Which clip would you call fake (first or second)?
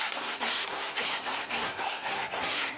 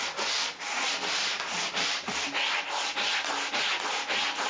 first